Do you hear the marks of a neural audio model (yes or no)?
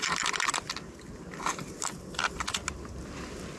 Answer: no